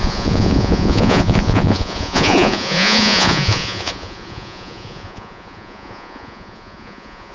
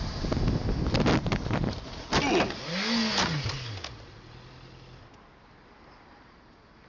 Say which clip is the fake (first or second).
first